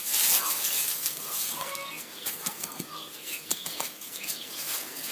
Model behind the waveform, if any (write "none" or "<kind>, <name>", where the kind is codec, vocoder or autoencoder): codec, SNAC